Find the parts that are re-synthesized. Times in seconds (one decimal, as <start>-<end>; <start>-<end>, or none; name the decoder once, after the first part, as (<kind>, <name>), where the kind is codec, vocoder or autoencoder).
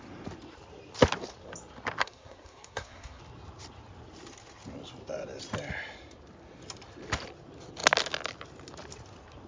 2.0-3.2 (codec, SNAC)